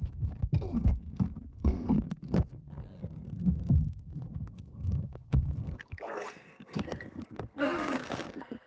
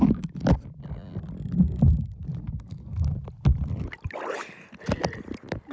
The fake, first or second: first